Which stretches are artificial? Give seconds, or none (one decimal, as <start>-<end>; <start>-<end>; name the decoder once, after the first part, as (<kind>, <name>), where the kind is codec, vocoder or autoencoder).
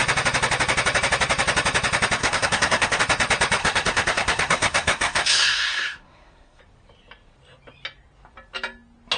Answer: 2.2-3.0 (codec, SNAC); 3.6-6.6